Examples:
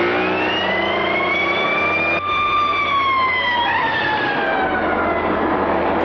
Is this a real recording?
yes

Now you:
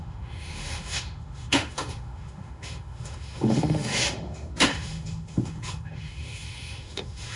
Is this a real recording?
no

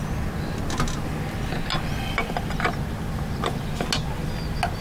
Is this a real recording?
yes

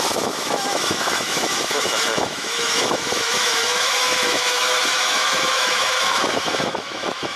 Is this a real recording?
no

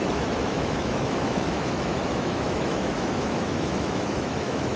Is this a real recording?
no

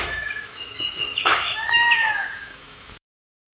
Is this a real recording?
no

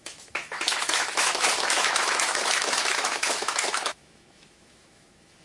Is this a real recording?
no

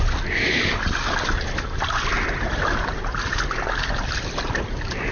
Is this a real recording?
yes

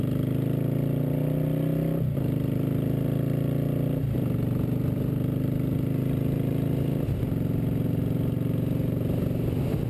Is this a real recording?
yes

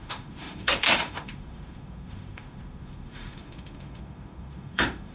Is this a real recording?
no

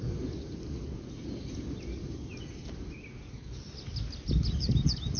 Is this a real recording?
yes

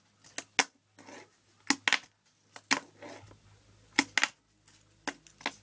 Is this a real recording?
yes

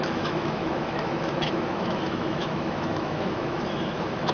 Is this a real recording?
no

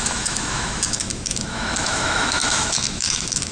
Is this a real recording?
no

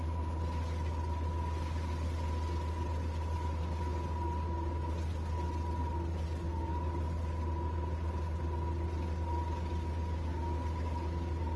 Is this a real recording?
yes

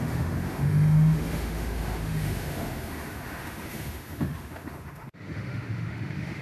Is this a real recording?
no